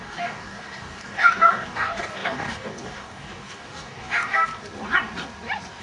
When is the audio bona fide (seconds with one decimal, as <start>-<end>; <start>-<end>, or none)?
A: 4.5-5.8